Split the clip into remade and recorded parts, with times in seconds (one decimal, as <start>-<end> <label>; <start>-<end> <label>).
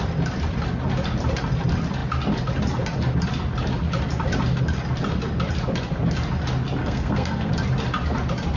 0.0-6.8 recorded; 6.8-7.5 remade; 7.5-8.6 recorded